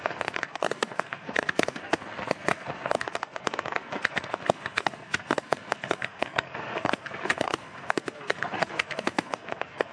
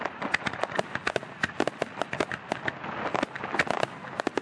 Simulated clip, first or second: first